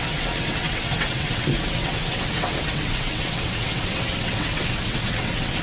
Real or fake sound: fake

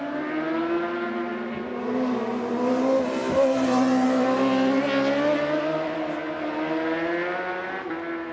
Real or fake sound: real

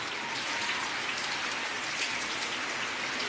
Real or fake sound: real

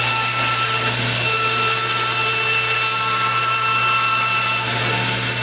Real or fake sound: real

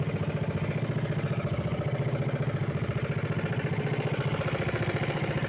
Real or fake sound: real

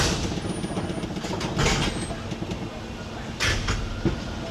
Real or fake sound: real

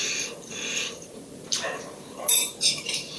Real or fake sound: fake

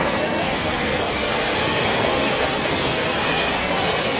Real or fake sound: fake